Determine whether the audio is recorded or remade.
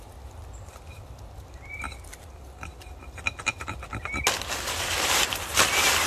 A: recorded